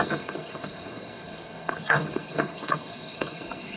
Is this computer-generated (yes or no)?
yes